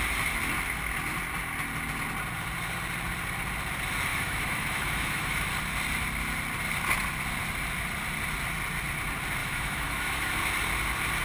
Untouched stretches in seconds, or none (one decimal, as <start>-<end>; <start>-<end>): 0.0-4.1; 5.5-9.4; 10.3-11.2